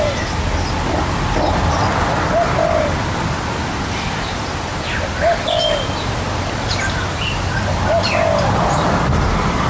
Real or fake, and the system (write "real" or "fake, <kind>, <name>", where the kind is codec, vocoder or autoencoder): real